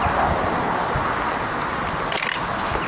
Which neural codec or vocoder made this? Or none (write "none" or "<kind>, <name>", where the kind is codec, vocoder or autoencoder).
none